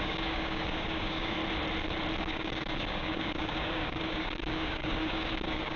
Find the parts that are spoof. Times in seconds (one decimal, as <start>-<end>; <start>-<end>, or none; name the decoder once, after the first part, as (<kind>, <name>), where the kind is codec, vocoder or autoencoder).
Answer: 0.0-1.4 (codec, DAC); 2.2-5.8